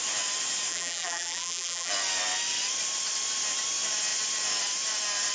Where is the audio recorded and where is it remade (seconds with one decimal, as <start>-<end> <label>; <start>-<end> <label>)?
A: 0.0-0.7 recorded; 0.7-1.9 remade; 1.9-5.3 recorded